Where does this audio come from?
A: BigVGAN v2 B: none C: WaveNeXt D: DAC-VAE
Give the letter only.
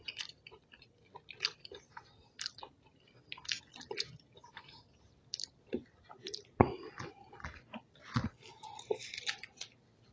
B